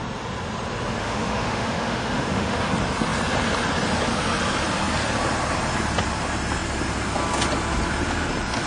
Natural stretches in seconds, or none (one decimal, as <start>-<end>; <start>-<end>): 0.0-1.0; 2.7-8.7